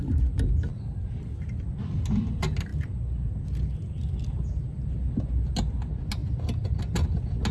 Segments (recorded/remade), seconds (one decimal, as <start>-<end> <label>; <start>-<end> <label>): 0.0-0.7 recorded; 0.7-1.7 remade; 1.7-6.2 recorded; 6.2-6.8 remade; 6.8-7.5 recorded